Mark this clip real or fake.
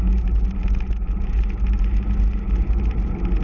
real